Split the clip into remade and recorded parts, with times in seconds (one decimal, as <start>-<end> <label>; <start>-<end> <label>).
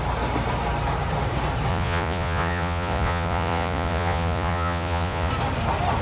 0.0-1.7 recorded; 1.7-5.3 remade; 5.3-6.0 recorded